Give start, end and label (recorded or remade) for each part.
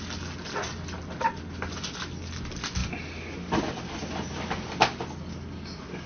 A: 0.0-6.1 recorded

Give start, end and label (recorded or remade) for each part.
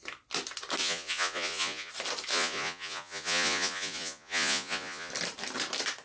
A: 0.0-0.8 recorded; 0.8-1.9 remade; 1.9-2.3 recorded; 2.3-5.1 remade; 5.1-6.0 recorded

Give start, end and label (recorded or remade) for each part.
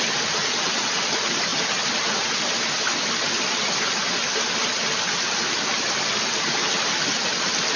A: 0.0-7.8 recorded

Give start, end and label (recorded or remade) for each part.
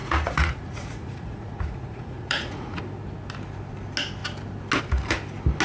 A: 0.0-2.8 remade; 2.8-5.6 recorded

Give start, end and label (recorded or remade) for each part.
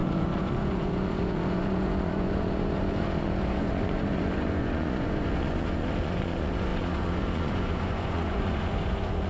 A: 0.0-9.3 remade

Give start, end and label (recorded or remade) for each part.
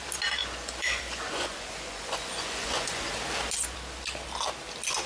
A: 0.0-0.4 recorded; 0.4-3.1 remade; 3.1-5.1 recorded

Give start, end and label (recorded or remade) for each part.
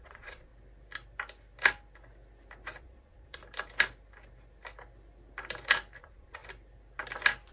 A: 0.0-0.5 remade; 0.5-2.8 recorded; 2.8-3.4 remade; 3.4-6.0 recorded; 6.0-6.4 remade; 6.4-7.5 recorded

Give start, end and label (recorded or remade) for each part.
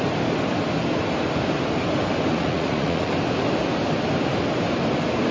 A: 0.0-2.3 recorded; 2.3-3.1 remade; 3.1-5.3 recorded